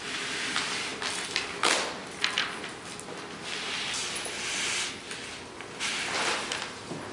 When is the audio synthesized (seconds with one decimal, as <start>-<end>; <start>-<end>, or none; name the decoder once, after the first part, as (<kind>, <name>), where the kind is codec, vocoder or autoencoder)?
none